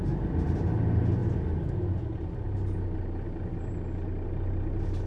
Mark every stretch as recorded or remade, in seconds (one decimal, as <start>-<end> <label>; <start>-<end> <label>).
0.0-5.1 recorded